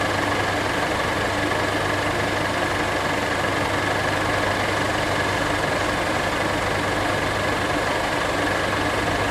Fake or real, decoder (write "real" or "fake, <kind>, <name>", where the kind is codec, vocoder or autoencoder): real